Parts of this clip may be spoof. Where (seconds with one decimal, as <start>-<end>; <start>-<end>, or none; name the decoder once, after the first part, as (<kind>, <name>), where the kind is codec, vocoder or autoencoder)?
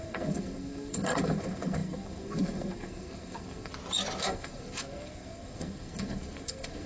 0.0-3.7 (codec, SNAC); 4.2-6.9